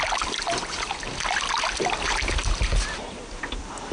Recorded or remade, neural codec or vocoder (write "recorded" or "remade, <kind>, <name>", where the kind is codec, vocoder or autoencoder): recorded